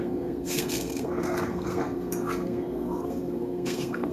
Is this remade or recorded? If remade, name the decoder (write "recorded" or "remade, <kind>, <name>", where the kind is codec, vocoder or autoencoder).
remade, codec, SNAC